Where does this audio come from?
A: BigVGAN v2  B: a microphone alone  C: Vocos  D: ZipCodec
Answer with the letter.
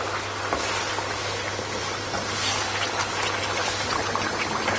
B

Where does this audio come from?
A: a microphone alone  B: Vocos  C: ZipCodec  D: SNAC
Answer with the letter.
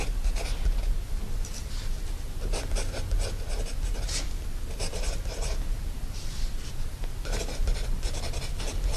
A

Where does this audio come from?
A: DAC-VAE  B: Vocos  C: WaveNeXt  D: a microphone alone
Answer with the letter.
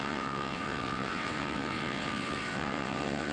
C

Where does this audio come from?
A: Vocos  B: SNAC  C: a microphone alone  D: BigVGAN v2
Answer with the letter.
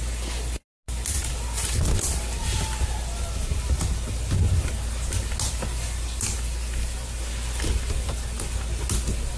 C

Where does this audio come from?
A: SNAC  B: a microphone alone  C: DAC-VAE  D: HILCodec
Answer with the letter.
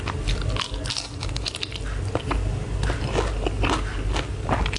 B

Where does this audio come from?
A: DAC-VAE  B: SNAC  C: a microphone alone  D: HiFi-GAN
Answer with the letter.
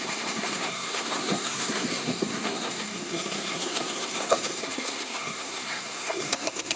B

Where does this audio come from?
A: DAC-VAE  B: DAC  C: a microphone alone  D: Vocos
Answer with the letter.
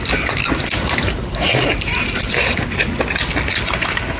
C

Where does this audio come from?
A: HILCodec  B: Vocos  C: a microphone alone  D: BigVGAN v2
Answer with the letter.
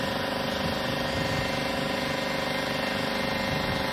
C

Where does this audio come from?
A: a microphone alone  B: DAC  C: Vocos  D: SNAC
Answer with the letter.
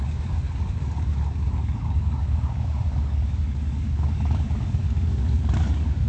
B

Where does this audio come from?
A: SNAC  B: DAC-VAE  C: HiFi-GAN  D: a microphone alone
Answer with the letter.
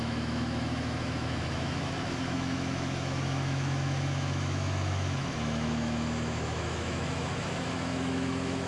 B